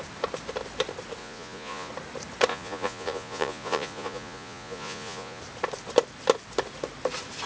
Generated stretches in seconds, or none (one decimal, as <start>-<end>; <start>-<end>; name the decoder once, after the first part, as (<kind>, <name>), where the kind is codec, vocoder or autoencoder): 1.2-1.9 (vocoder, Vocos); 2.5-5.4